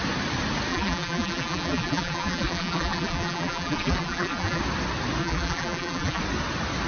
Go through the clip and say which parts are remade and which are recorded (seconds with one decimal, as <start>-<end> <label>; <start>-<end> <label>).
0.0-0.7 recorded; 0.7-4.6 remade; 4.6-5.2 recorded; 5.2-6.2 remade; 6.2-6.9 recorded

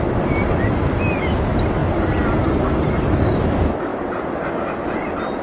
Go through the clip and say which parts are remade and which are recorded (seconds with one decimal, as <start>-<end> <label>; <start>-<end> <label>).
0.0-5.4 recorded

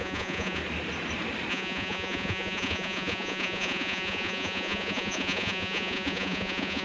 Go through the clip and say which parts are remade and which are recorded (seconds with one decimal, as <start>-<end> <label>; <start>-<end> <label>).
0.0-0.6 remade; 0.6-1.5 recorded; 1.5-6.8 remade

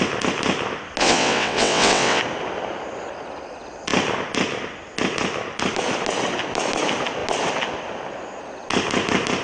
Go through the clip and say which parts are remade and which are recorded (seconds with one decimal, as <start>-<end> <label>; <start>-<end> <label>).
0.0-1.0 recorded; 1.0-2.2 remade; 2.2-9.4 recorded